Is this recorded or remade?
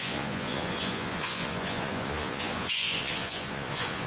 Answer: remade